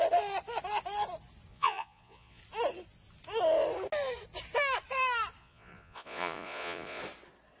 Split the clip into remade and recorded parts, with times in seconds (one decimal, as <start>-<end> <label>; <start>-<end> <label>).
0.0-1.5 recorded; 1.5-2.4 remade; 2.4-5.4 recorded; 5.4-7.0 remade; 7.0-7.6 recorded